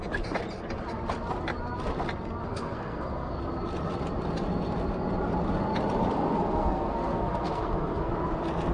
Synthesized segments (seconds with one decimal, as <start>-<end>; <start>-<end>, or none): 2.4-3.4; 6.3-8.1